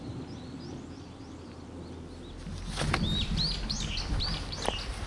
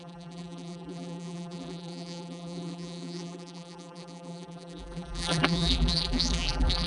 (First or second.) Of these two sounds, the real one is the first